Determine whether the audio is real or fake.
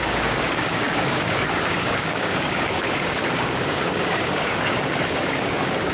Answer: fake